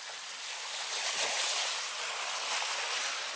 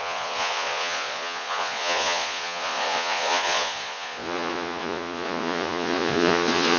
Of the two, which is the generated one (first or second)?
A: second